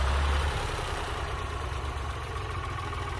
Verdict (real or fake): fake